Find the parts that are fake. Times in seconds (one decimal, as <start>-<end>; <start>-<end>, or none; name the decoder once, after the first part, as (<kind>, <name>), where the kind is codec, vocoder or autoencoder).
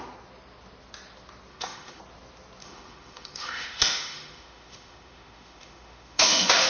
1.5-2.0 (autoencoder, DAC-VAE); 2.6-6.7